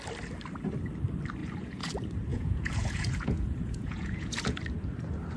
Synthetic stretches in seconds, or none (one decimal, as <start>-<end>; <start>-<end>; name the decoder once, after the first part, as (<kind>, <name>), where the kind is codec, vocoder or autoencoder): 1.4-1.9 (vocoder, Vocos); 2.3-4.6